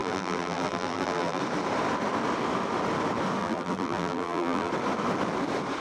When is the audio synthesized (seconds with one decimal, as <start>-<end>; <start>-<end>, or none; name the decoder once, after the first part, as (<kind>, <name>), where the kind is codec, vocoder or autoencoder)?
0.0-1.4 (vocoder, BigVGAN v2); 3.4-4.7